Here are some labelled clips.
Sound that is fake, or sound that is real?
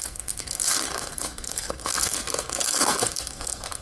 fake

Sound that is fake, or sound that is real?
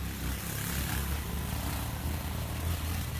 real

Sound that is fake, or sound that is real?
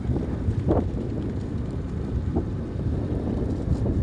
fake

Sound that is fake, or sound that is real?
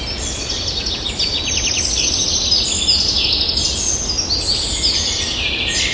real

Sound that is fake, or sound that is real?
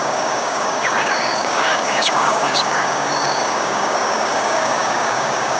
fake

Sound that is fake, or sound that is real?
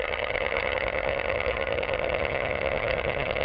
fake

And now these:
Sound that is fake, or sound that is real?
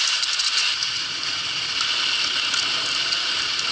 real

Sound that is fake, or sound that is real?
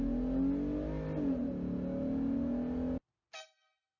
real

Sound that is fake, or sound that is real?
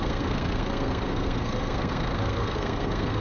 fake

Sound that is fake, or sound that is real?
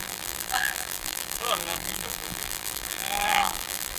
fake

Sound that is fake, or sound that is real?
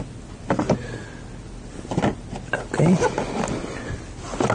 real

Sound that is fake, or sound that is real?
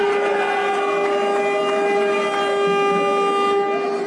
real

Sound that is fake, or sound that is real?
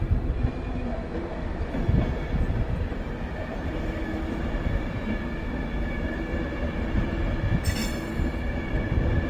real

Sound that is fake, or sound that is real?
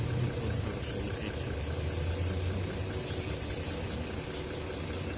real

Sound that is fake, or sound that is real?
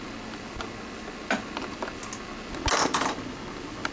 real